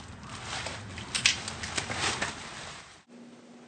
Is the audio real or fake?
real